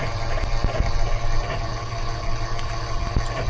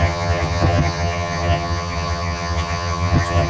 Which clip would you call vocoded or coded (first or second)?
second